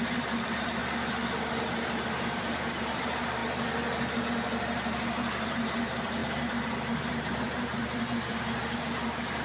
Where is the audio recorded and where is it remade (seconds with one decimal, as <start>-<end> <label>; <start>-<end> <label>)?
0.0-0.8 remade; 0.8-1.6 recorded; 1.6-3.4 remade; 3.4-4.3 recorded; 4.3-9.4 remade